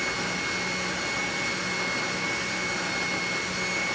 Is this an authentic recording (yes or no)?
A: yes